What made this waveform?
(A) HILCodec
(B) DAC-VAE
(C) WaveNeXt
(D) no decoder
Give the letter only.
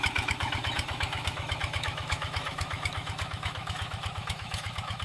B